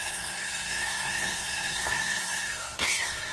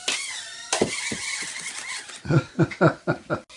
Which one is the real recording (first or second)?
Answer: second